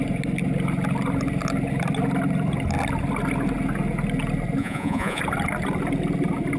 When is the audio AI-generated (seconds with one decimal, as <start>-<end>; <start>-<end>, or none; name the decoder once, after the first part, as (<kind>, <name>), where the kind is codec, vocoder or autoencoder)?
4.6-5.2 (vocoder, Vocos)